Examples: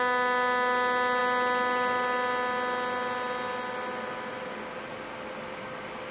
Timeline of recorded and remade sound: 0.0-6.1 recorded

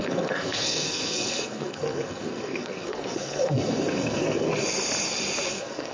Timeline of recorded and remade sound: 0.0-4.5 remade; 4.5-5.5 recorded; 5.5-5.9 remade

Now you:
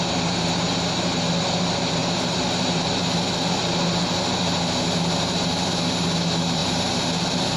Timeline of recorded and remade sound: 0.0-7.6 recorded

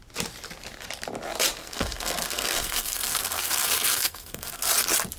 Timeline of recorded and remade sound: 0.0-1.6 recorded; 1.6-4.7 remade; 4.7-5.2 recorded

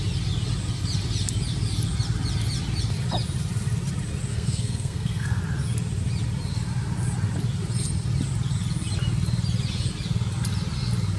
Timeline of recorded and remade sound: 0.0-4.3 recorded; 4.3-5.4 remade; 5.4-11.2 recorded